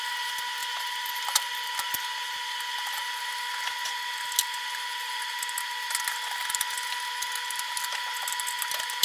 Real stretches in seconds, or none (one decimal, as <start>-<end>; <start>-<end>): 0.0-9.0